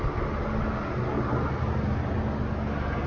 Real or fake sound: real